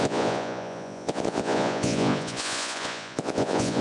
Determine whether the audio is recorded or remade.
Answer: remade